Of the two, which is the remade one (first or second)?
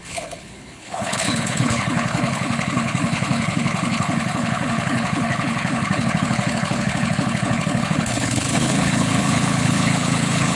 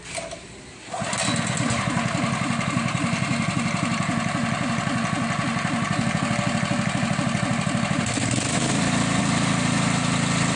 first